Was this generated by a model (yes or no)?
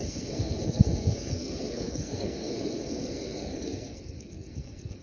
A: yes